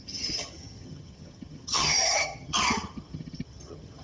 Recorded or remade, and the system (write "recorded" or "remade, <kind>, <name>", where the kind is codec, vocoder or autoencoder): remade, vocoder, HiFi-GAN